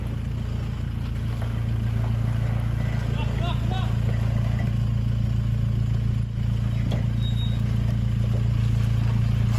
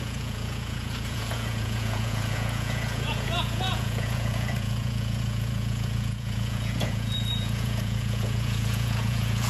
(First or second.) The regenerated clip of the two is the second